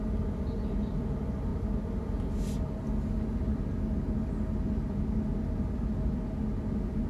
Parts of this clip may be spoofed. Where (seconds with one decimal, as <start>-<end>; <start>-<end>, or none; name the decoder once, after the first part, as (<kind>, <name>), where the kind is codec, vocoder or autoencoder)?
none